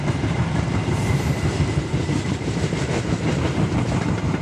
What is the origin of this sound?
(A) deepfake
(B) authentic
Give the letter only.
A